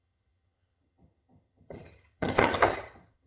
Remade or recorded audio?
remade